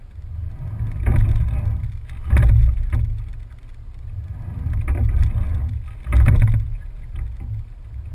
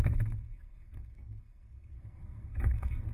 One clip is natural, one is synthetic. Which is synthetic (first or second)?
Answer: second